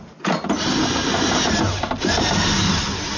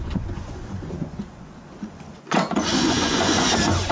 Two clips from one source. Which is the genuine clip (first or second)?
first